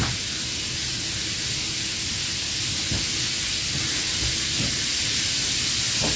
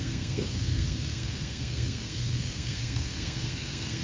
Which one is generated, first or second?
second